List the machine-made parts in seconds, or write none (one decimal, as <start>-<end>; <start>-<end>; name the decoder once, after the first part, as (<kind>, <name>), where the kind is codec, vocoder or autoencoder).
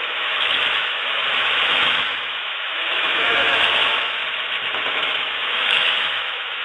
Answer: 0.0-4.2 (autoencoder, DAC-VAE); 4.9-6.6